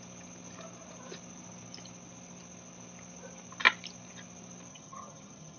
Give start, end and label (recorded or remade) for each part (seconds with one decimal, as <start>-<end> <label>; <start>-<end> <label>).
0.0-4.7 recorded; 4.7-5.6 remade